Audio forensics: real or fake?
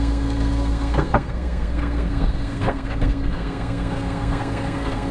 fake